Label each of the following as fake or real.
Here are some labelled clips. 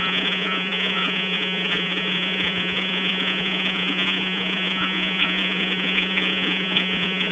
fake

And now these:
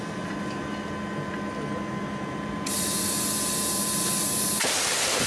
real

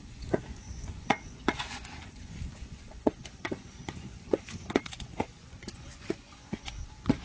fake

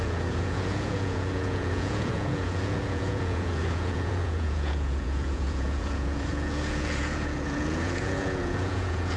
fake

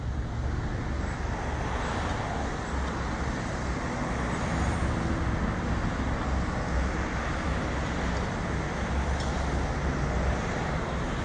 real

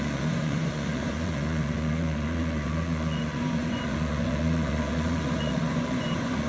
fake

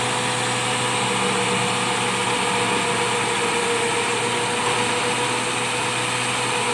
real